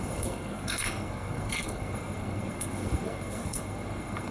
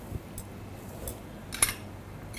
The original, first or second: second